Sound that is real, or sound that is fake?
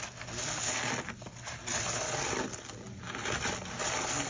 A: real